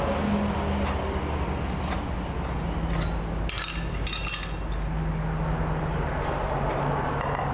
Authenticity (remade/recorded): recorded